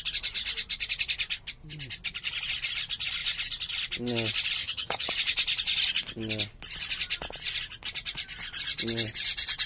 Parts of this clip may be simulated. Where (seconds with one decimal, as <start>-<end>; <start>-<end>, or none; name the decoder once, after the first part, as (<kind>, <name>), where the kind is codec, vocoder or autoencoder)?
4.6-5.1 (vocoder, HiFi-GAN)